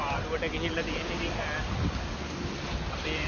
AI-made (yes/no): no